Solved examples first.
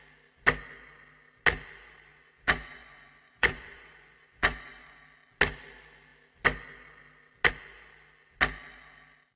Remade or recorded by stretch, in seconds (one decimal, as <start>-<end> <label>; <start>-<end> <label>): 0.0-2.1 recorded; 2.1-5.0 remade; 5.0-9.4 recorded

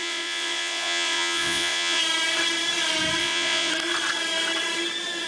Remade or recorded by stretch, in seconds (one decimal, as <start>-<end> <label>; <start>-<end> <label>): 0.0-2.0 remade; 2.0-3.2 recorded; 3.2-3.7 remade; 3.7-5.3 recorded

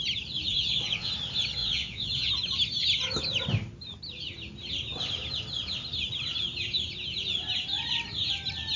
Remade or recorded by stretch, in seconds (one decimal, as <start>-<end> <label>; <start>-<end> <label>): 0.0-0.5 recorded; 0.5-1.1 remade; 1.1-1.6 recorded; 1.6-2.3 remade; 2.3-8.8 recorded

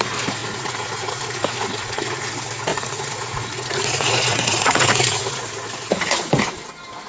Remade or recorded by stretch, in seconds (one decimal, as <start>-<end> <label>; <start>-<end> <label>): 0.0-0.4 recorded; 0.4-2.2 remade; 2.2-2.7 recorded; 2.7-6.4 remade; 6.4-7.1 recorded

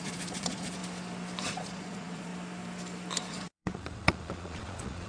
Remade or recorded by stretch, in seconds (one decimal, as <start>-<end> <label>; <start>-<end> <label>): 0.0-0.8 remade; 0.8-1.4 recorded; 1.4-2.3 remade; 2.3-3.2 recorded; 3.2-5.1 remade